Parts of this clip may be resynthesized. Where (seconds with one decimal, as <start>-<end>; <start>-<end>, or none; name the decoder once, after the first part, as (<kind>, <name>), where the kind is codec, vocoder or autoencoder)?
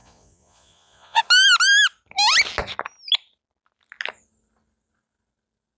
0.0-1.2 (vocoder, Vocos)